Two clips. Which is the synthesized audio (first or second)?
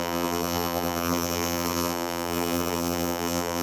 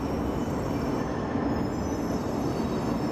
first